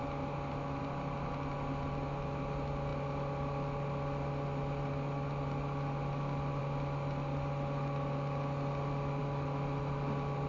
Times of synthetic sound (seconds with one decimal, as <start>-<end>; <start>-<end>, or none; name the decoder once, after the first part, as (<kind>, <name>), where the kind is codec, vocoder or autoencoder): none